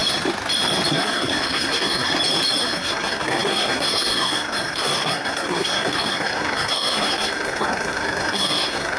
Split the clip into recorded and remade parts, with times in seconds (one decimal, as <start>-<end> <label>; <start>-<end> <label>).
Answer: 0.0-0.9 recorded; 0.9-2.1 remade; 2.1-2.6 recorded; 2.6-9.0 remade